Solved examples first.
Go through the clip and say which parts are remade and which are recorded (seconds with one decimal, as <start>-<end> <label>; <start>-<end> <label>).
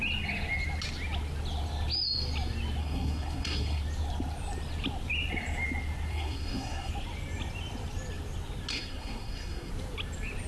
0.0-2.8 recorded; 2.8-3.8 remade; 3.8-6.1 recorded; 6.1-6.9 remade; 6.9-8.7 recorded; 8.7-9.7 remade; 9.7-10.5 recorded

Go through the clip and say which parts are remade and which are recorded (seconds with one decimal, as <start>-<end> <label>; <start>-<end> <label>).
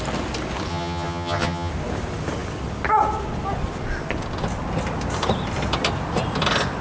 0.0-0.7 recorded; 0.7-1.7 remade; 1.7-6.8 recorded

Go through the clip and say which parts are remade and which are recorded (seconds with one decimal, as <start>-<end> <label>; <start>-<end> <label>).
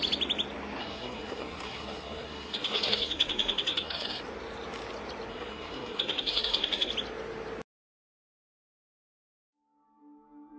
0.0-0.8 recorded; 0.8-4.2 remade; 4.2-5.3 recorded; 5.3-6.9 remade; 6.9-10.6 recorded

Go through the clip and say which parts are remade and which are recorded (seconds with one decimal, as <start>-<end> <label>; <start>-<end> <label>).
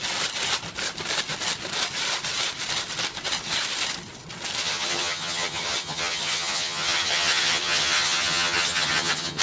0.0-4.6 recorded; 4.6-9.4 remade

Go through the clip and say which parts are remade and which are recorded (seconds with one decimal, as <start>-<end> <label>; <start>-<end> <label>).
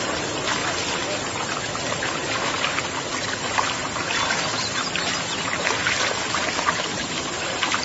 0.0-7.8 recorded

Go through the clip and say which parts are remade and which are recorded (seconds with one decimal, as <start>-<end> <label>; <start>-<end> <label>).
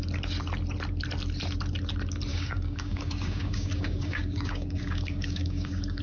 0.0-2.3 recorded; 2.3-6.0 remade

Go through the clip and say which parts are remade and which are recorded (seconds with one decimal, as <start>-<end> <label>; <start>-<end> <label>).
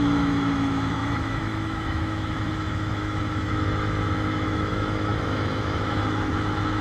0.0-6.8 remade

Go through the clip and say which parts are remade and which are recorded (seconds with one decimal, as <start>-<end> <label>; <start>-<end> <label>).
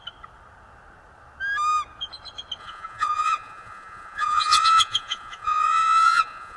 0.0-2.6 recorded; 2.6-6.6 remade